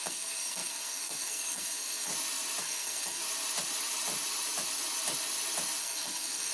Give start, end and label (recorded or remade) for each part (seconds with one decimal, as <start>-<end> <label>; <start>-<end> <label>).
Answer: 0.0-2.1 remade; 2.1-2.6 recorded; 2.6-3.2 remade; 3.2-5.8 recorded; 5.8-6.5 remade

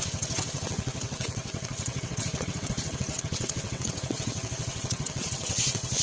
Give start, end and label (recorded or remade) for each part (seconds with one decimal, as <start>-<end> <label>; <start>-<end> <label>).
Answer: 0.0-6.0 remade